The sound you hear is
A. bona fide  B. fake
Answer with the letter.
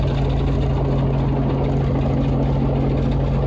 A